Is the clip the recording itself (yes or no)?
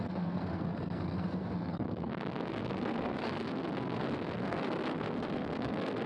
no